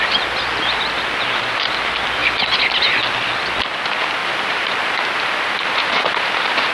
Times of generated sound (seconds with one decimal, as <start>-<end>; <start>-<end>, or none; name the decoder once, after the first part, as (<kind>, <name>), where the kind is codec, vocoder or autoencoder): 4.2-6.7 (vocoder, BigVGAN v2)